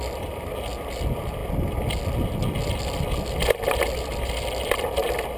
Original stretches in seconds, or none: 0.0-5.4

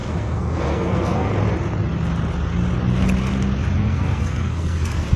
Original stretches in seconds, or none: 1.3-3.8

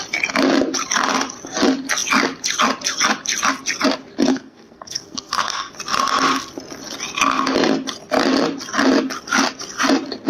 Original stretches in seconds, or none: 0.0-4.3; 5.7-10.3

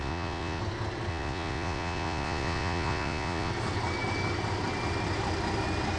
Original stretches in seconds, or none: 0.6-1.1; 3.5-6.0

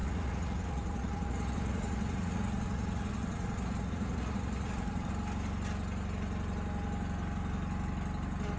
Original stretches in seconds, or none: 5.1-8.6

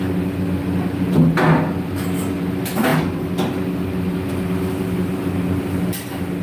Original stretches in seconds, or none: 0.0-6.4

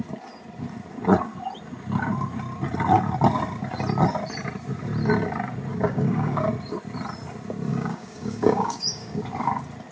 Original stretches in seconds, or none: 0.0-5.7; 6.5-7.7; 9.2-9.9